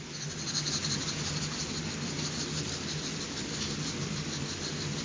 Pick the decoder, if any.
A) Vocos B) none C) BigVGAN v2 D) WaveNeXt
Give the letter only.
B